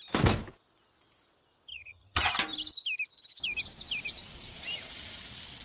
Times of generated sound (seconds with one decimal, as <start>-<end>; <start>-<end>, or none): 1.7-2.3